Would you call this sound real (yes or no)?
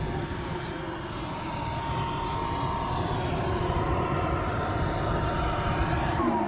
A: yes